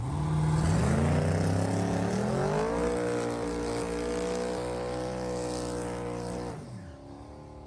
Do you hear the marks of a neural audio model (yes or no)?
no